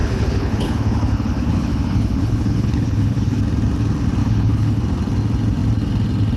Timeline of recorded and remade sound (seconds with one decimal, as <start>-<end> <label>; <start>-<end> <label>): 0.0-3.4 remade; 3.4-4.2 recorded; 4.2-4.8 remade; 4.8-6.4 recorded